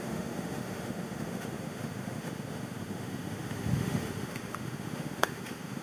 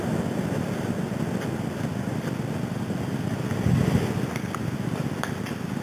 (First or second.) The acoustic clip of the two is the second